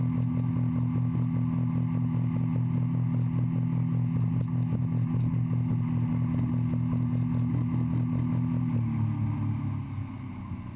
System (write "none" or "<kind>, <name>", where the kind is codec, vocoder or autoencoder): none